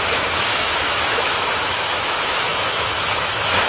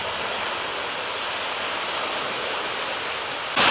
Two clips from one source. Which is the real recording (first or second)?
second